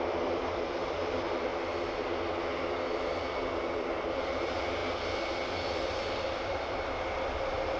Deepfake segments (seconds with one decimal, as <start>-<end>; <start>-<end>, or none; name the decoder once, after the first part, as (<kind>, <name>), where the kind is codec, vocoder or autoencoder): 0.0-1.5 (vocoder, BigVGAN v2); 3.7-4.8; 5.6-7.8